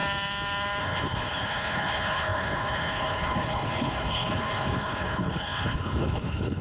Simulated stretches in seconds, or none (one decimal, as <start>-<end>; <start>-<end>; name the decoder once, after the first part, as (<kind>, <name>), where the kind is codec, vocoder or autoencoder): 0.8-6.6 (codec, HILCodec)